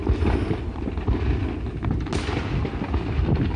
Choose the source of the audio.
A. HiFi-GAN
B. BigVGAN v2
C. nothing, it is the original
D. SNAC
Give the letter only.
C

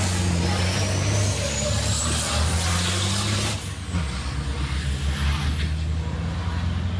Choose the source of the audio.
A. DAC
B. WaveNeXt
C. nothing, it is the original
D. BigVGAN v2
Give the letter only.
C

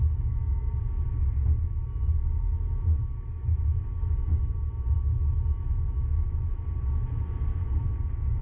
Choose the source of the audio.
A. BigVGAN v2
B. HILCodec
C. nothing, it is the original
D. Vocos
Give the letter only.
C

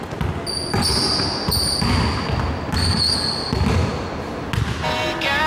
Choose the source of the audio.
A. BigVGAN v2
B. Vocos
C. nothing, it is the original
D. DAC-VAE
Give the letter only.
C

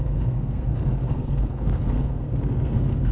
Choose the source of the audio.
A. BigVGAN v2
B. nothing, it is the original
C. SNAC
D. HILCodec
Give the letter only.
C